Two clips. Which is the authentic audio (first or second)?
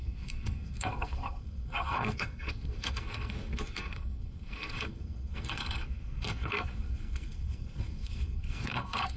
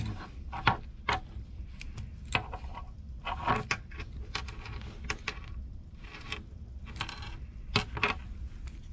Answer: second